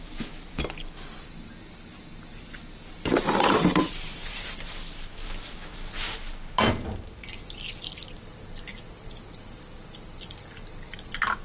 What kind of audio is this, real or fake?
real